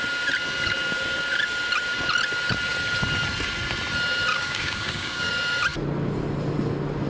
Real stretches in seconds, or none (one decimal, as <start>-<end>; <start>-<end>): 0.0-4.3; 5.3-7.1